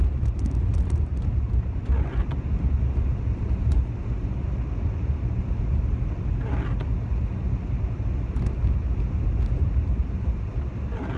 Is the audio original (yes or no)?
yes